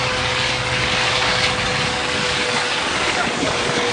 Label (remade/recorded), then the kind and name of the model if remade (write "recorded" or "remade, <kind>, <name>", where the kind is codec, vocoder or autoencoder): remade, codec, DAC